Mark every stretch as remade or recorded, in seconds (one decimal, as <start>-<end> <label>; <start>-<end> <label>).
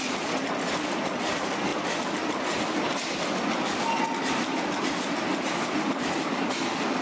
0.0-7.0 recorded